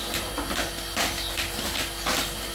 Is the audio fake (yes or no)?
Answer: no